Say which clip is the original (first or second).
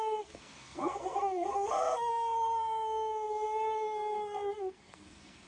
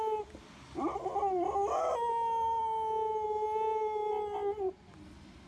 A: second